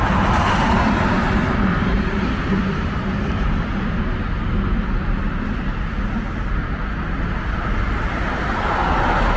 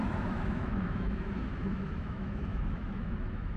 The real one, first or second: first